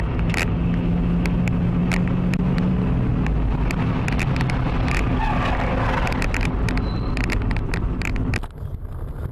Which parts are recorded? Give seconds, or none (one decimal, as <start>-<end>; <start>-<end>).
0.0-9.3